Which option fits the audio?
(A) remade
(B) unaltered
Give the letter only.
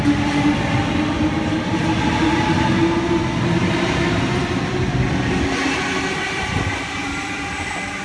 B